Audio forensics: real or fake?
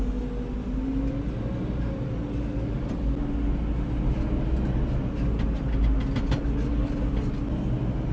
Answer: real